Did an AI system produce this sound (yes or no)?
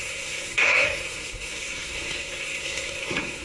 yes